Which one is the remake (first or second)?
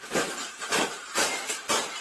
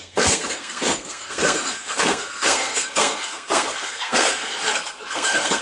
second